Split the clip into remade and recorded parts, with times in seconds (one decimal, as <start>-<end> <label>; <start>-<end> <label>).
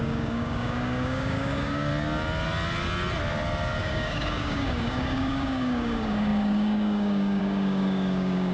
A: 0.0-1.9 remade; 1.9-3.8 recorded; 3.8-8.5 remade